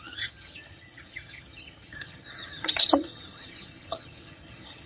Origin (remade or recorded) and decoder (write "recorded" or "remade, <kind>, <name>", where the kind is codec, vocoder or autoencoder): remade, vocoder, HiFi-GAN